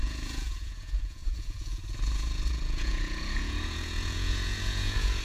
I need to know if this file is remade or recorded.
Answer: remade